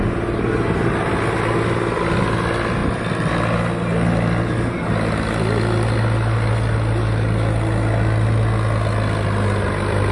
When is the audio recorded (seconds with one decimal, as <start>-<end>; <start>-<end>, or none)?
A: 0.0-10.1

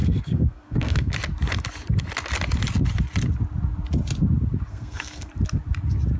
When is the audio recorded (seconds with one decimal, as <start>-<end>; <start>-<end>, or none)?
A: 1.1-4.7; 5.3-6.2

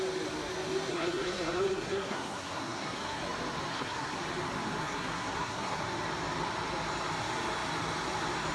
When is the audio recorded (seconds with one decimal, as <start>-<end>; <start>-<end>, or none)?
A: 0.0-0.9; 3.2-3.7; 4.2-4.8; 5.8-8.5

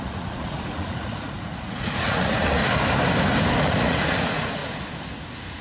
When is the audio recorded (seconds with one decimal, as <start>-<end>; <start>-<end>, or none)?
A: 2.6-3.6; 4.6-5.6

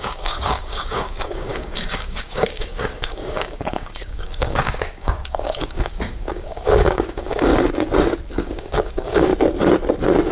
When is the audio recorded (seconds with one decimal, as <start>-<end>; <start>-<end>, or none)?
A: 7.5-8.3; 9.3-10.3

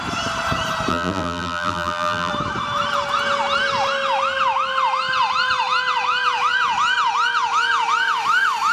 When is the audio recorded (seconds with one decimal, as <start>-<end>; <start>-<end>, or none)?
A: 0.0-0.9; 2.3-8.7

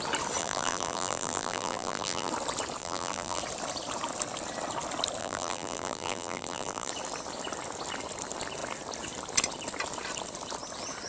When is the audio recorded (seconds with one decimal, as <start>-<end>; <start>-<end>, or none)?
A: 0.0-0.4; 2.3-2.8; 3.4-5.2; 6.9-11.1

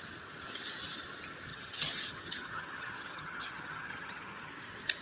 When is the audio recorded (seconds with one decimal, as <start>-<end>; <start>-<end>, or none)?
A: 0.0-1.5; 4.5-5.0